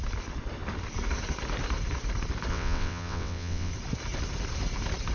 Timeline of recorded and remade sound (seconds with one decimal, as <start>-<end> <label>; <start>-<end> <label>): 0.0-2.5 recorded; 2.5-3.7 remade; 3.7-5.1 recorded